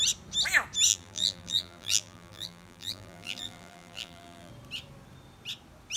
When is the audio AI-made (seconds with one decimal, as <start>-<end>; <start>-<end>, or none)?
0.9-4.5